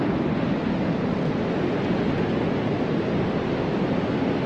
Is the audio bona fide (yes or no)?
yes